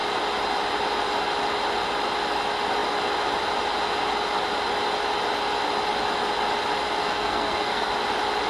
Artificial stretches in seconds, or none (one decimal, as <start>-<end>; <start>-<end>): 7.0-7.9